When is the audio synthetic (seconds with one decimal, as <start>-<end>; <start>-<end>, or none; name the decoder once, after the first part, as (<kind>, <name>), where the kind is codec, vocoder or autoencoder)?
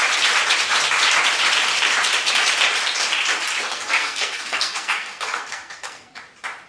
3.7-6.2 (codec, SNAC)